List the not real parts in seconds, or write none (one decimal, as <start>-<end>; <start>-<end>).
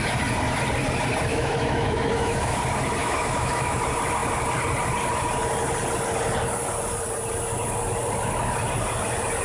1.3-2.6; 3.0-3.8